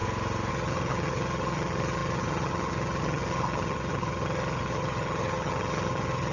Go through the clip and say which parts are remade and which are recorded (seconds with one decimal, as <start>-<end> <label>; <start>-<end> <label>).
0.0-0.5 recorded; 0.5-6.3 remade